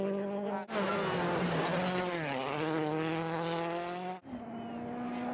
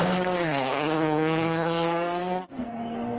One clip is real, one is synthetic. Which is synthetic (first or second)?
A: second